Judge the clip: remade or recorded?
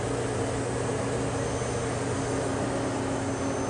recorded